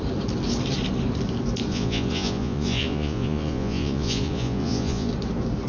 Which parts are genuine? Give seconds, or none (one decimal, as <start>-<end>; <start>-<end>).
0.0-1.7; 5.1-5.7